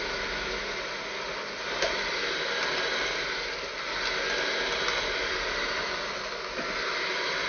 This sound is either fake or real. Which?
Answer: real